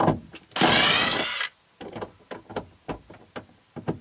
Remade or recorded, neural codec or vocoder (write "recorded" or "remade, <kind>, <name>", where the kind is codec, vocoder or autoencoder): recorded